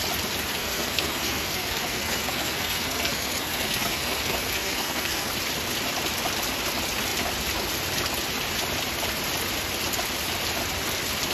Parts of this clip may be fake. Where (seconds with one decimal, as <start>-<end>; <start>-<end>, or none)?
0.5-5.3